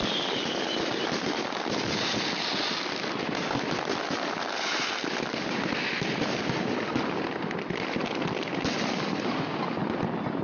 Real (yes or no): yes